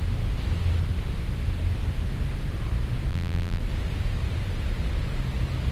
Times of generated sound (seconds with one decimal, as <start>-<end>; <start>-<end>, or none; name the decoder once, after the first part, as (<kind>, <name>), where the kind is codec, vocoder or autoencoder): 3.1-3.6 (vocoder, BigVGAN v2)